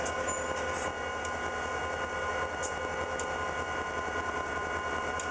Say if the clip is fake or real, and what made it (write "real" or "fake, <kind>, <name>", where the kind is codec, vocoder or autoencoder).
real